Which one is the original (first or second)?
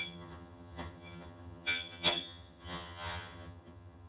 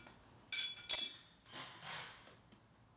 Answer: second